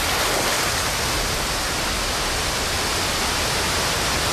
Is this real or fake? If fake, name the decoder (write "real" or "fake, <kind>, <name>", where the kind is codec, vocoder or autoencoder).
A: real